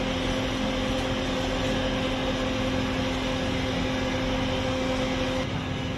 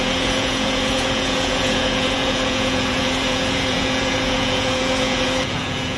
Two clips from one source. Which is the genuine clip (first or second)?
first